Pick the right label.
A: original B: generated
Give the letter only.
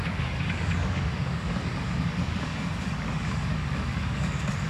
B